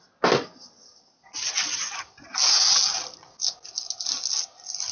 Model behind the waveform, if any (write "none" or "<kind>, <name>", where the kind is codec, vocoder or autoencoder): none